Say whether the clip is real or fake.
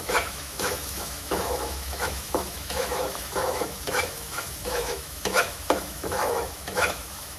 fake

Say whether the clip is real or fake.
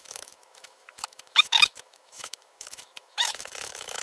fake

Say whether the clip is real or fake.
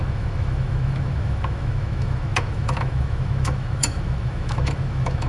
fake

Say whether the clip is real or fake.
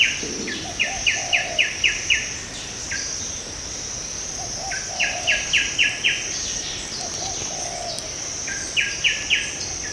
real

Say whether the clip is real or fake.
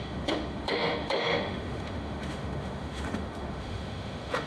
fake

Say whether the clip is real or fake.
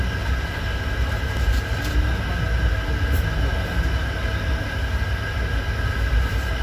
real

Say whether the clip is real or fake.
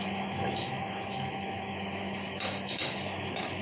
fake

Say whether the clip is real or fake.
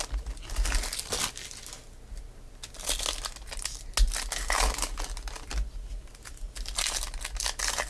real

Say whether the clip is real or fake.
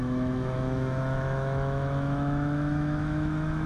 fake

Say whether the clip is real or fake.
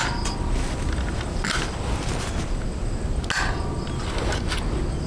real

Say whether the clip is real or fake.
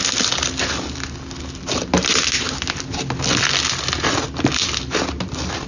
real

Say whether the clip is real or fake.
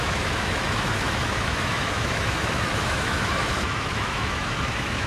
fake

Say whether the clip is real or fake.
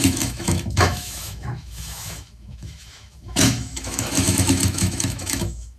fake